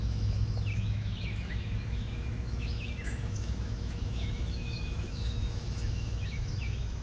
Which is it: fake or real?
fake